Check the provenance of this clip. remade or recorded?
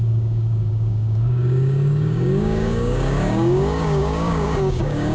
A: remade